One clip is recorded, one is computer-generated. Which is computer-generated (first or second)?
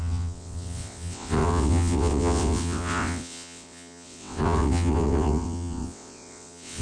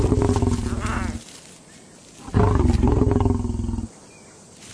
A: first